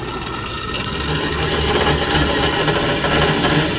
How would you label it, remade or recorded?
recorded